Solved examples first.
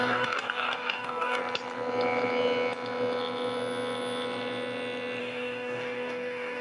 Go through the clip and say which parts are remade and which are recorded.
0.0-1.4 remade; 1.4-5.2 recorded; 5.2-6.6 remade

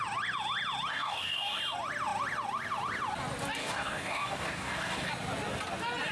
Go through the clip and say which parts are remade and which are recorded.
0.0-0.9 recorded; 0.9-1.6 remade; 1.6-3.6 recorded; 3.6-5.1 remade; 5.1-6.1 recorded

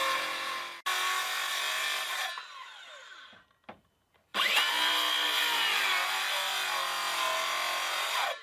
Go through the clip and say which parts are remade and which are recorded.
0.0-8.4 recorded

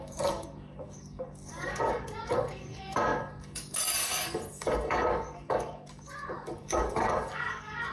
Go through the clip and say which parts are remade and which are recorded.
0.0-7.9 remade